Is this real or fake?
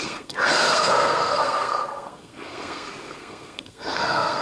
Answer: fake